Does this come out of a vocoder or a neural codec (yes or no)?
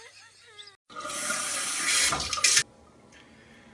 no